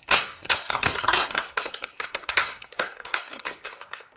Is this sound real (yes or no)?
no